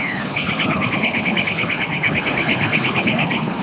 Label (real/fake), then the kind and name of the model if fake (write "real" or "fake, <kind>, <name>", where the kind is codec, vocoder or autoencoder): fake, codec, HILCodec